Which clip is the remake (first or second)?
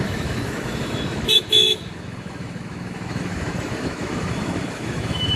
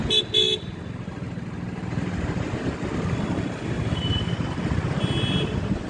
first